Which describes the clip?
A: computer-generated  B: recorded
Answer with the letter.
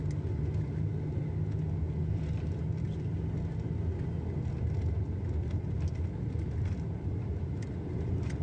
B